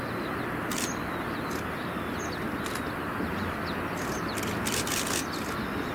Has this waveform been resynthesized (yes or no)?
no